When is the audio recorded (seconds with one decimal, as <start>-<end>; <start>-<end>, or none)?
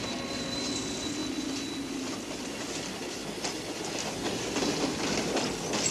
0.0-5.9